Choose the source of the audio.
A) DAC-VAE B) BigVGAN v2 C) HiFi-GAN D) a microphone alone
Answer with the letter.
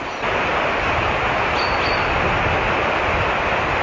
D